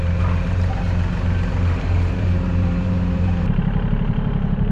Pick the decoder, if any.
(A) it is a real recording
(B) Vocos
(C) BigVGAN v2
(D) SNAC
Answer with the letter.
C